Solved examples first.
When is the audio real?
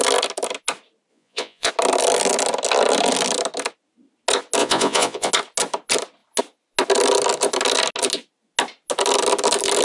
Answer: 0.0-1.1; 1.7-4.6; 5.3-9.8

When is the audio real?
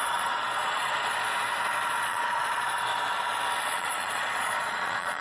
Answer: 1.3-2.0; 2.9-3.6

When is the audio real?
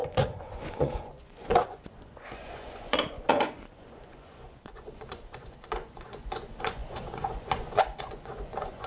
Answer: none